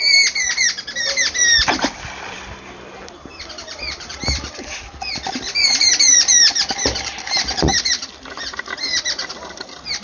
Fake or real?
fake